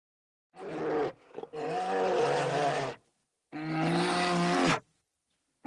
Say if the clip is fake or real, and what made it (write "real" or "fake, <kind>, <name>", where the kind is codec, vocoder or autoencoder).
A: real